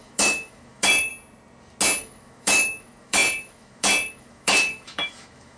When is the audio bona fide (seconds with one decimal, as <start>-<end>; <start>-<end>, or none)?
1.1-2.0